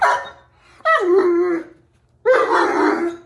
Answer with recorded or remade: recorded